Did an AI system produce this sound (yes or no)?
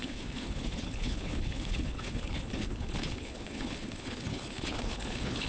yes